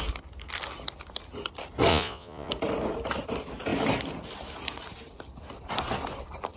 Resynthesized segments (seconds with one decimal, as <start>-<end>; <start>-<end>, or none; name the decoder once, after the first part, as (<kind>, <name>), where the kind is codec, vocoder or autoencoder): 1.9-2.5 (vocoder, Vocos)